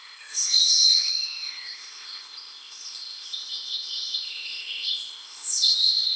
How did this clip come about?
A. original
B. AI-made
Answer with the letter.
B